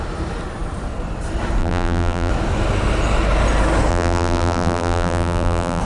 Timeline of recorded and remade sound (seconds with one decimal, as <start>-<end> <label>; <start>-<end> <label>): 0.0-1.6 recorded; 1.6-2.3 remade; 2.3-3.9 recorded; 3.9-5.8 remade